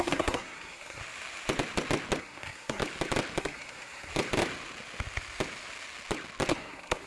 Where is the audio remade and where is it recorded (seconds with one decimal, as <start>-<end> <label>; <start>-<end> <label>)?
0.0-1.0 remade; 1.0-2.2 recorded; 2.2-2.8 remade; 2.8-3.4 recorded; 3.4-4.1 remade; 4.1-6.5 recorded; 6.5-7.1 remade